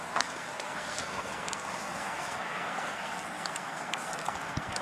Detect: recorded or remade remade